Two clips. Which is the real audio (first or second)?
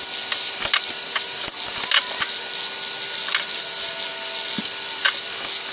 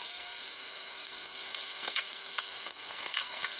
first